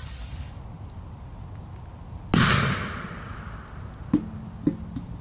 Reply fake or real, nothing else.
real